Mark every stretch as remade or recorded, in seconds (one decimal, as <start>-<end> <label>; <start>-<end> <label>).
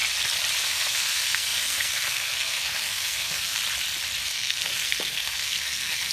0.0-0.6 recorded; 0.6-3.6 remade; 3.6-4.2 recorded; 4.2-6.1 remade